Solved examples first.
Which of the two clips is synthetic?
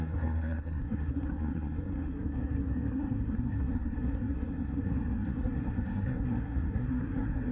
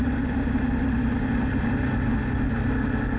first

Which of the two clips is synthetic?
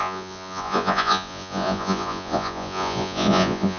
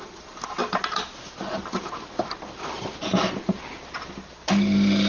first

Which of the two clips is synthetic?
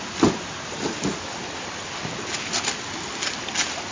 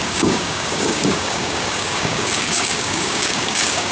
second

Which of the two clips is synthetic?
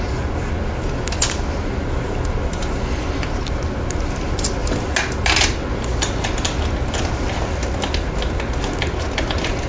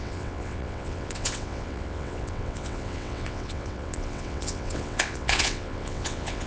second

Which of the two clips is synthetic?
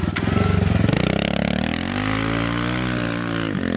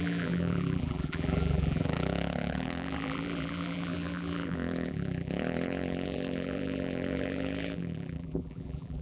second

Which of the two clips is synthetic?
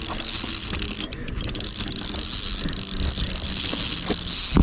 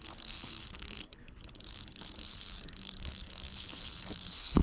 second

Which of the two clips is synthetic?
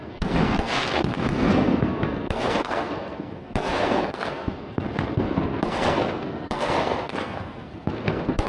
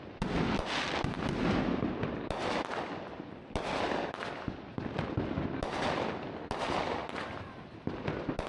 first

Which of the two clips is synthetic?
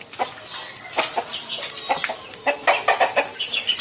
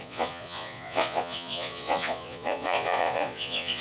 second